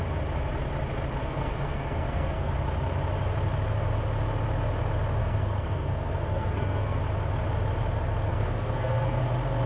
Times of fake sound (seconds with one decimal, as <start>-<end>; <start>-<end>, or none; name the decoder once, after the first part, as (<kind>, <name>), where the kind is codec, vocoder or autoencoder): 1.2-2.5 (codec, SNAC); 5.2-7.0; 8.3-9.2